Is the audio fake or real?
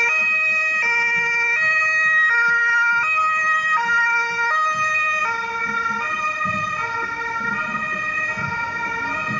real